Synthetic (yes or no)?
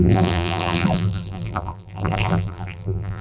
yes